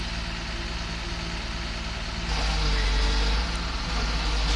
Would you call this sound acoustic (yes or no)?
yes